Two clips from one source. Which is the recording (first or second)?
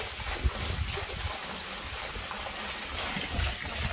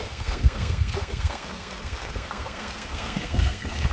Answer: first